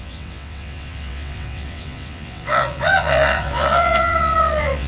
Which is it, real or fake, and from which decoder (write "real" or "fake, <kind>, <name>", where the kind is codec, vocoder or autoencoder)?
fake, vocoder, WaveNeXt